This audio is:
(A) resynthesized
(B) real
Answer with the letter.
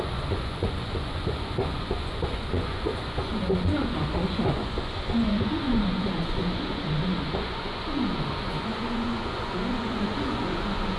A